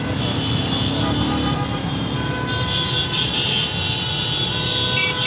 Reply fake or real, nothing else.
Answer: real